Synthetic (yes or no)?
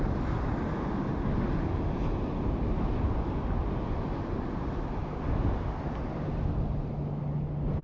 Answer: no